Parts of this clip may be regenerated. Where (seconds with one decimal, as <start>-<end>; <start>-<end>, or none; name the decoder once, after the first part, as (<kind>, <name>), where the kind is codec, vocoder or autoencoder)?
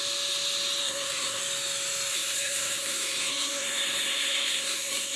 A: 0.8-1.4 (codec, SNAC); 2.1-5.2